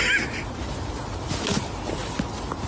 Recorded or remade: recorded